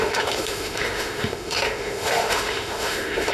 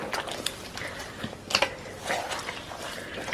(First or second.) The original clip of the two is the second